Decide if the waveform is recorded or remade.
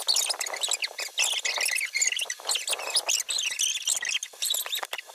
recorded